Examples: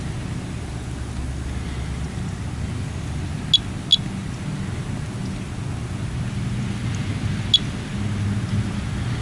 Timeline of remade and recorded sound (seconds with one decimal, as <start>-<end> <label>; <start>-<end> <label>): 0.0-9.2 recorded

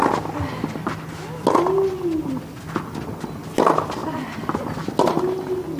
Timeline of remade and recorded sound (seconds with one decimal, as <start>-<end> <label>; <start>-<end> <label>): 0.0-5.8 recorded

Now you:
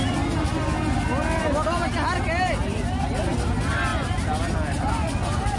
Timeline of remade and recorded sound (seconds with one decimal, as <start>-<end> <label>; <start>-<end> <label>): 0.0-5.6 recorded